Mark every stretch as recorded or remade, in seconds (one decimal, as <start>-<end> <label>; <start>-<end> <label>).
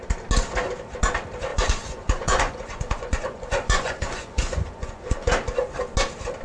0.0-1.5 recorded; 1.5-5.3 remade; 5.3-6.4 recorded